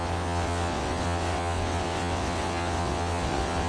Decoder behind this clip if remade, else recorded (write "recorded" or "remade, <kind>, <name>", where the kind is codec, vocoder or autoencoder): remade, vocoder, WaveNeXt